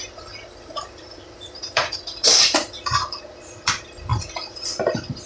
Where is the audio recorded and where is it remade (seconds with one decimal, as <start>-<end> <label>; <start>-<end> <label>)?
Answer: 0.0-3.2 remade; 3.2-4.1 recorded; 4.1-4.7 remade; 4.7-5.3 recorded